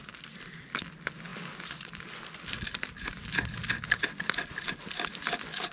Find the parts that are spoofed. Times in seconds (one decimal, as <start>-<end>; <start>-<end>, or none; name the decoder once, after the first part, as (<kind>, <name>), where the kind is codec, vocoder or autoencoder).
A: none